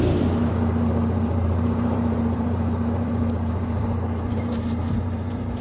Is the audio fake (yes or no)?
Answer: yes